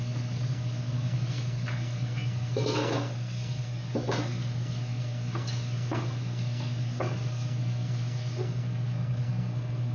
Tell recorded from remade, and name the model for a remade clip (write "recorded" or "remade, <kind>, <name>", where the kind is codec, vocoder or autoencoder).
remade, codec, SNAC